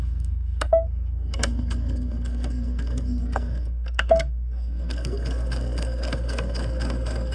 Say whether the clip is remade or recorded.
remade